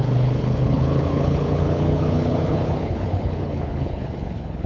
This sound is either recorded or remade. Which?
remade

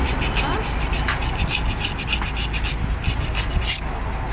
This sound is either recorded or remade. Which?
recorded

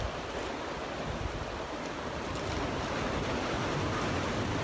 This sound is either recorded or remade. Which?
recorded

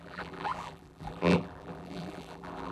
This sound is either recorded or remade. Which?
remade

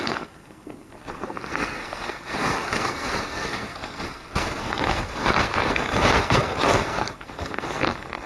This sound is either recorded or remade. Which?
remade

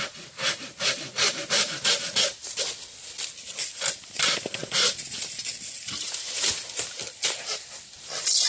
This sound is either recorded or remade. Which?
recorded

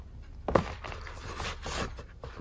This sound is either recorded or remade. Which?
recorded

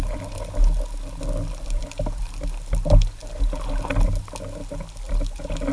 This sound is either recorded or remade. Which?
recorded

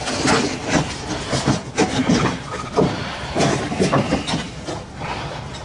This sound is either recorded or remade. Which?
recorded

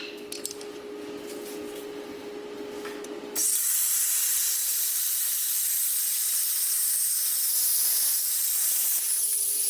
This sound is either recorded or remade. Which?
recorded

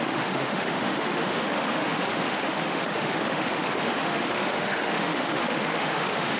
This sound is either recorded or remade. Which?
remade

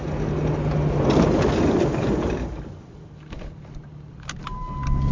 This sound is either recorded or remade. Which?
recorded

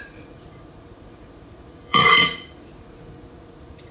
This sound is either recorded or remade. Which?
remade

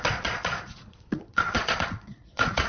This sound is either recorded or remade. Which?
remade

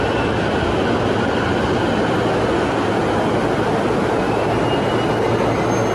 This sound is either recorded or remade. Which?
recorded